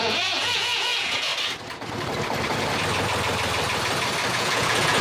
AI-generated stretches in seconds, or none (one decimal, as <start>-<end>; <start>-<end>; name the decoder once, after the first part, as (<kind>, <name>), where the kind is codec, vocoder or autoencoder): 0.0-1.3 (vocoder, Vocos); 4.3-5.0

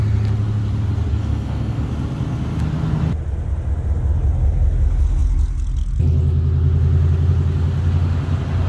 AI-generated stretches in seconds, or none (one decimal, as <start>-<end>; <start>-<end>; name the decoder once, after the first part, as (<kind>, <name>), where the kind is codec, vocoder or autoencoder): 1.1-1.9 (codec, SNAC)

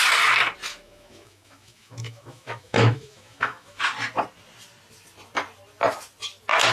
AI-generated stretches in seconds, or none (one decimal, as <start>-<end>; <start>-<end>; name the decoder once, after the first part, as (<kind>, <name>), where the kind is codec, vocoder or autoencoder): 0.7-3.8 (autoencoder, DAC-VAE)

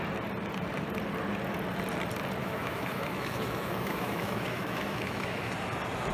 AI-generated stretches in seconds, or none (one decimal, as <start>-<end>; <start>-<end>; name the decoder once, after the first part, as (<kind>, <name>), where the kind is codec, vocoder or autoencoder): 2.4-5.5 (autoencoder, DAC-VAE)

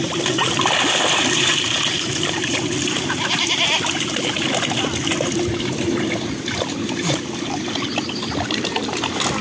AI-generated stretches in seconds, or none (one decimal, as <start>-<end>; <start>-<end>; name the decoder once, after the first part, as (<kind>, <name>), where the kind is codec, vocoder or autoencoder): none